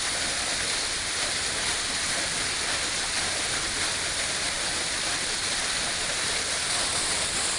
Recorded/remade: recorded